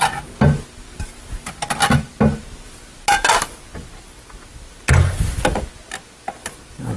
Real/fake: real